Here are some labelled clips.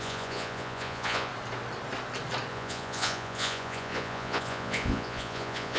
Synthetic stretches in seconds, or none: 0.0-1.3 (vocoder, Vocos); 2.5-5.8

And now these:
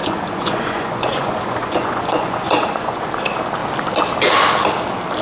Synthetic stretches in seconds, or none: 0.0-3.1 (vocoder, Vocos)

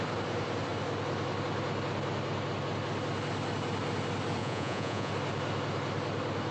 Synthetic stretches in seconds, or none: 4.4-5.1 (vocoder, Vocos)

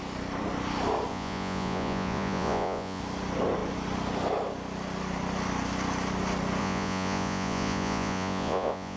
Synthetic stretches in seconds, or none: 1.1-3.0 (vocoder, Vocos); 6.6-9.0

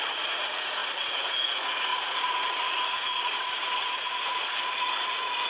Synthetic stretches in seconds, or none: 0.0-5.5 (vocoder, Vocos)

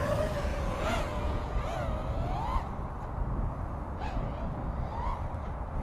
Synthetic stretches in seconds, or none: 0.5-1.5 (vocoder, Vocos)

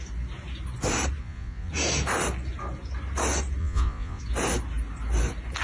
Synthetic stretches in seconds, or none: 1.2-1.7 (vocoder, Vocos); 3.6-4.2